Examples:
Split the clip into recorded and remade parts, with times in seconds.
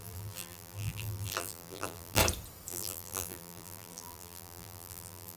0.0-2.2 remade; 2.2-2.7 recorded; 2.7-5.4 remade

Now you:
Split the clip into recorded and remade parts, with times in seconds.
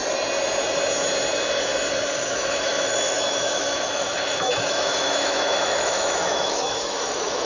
0.0-2.1 recorded; 2.1-7.5 remade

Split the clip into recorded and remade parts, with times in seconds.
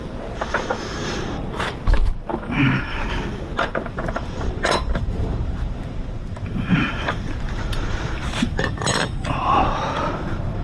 0.0-0.7 remade; 0.7-1.4 recorded; 1.4-2.3 remade; 2.3-2.9 recorded; 2.9-10.6 remade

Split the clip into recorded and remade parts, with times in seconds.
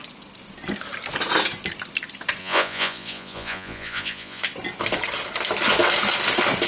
0.0-2.4 recorded; 2.4-4.4 remade; 4.4-6.7 recorded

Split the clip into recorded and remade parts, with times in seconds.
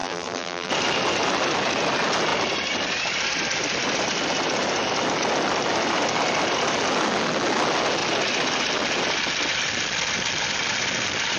0.0-0.7 remade; 0.7-11.4 recorded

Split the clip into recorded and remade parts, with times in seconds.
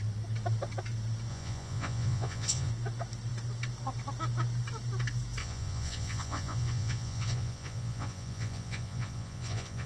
0.0-1.3 recorded; 1.3-2.7 remade; 2.7-5.4 recorded; 5.4-9.9 remade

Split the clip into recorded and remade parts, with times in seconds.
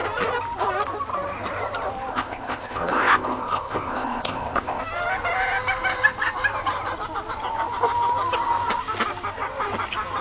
0.0-2.1 recorded; 2.1-4.8 remade; 4.8-10.2 recorded